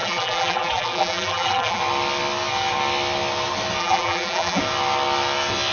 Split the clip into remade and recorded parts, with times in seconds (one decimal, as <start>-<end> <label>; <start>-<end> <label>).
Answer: 0.0-1.8 remade; 1.8-3.8 recorded; 3.8-4.6 remade; 4.6-5.7 recorded